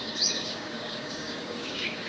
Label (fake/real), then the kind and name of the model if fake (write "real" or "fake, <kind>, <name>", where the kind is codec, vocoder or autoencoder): fake, codec, DAC